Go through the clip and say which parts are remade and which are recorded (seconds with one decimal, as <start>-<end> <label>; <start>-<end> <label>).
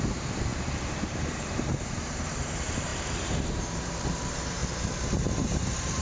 0.0-4.6 remade; 4.6-5.3 recorded; 5.3-6.0 remade